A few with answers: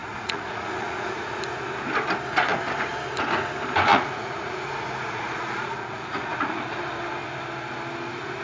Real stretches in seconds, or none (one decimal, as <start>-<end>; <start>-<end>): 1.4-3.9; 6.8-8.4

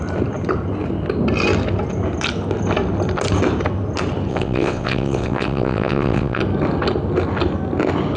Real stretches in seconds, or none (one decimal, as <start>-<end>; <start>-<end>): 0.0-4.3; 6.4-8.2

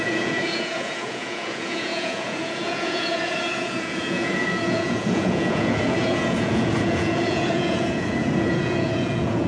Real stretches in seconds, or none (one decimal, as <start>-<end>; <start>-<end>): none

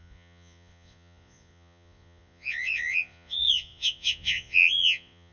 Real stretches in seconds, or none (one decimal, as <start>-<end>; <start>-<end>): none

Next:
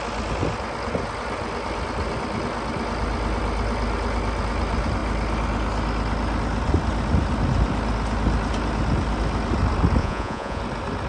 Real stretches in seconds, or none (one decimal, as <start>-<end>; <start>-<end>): 0.0-10.0; 10.6-11.1